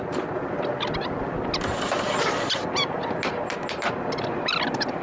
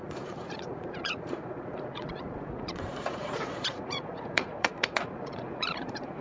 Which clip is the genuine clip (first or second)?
first